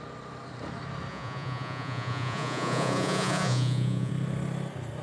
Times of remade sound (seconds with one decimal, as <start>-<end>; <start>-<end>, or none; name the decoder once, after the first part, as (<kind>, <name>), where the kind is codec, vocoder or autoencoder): 1.1-4.1 (vocoder, Vocos)